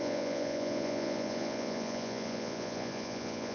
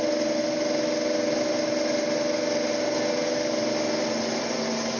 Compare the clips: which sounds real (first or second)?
second